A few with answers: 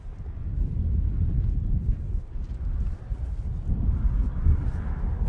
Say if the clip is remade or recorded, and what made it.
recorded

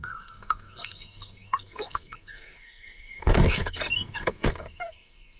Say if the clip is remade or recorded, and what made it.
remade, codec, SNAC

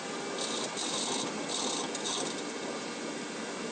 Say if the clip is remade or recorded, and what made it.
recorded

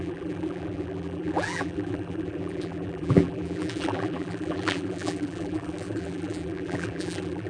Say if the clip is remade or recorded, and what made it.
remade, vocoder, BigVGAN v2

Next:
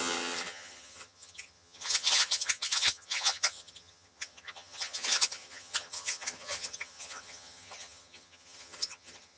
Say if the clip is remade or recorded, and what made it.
remade, vocoder, HiFi-GAN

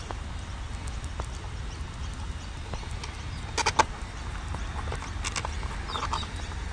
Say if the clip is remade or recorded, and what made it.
recorded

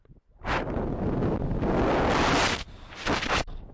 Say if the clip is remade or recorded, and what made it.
recorded